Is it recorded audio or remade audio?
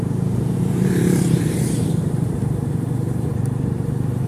remade